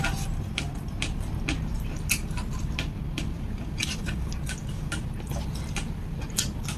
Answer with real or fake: real